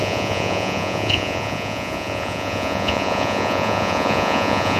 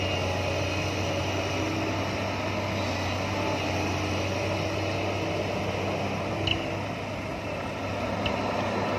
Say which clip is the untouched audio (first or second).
second